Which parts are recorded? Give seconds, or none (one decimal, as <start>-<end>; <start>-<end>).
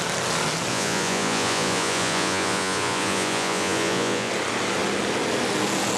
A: 0.0-0.7; 4.3-6.0